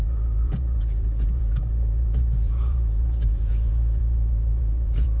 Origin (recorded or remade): remade